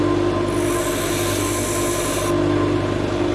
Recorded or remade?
recorded